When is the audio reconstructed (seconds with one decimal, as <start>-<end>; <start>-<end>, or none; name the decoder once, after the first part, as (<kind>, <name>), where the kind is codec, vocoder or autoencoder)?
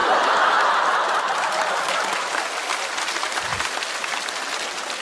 none